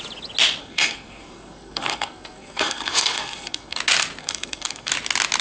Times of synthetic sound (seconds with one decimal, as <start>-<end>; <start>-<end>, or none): 0.6-3.8; 4.2-4.9

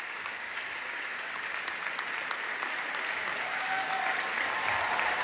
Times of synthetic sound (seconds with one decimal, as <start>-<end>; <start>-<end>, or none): 0.0-1.5; 3.4-4.0

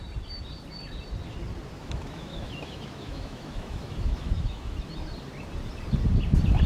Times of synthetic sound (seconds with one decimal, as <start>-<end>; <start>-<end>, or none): 1.8-4.7